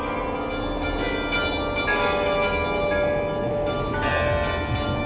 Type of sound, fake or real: real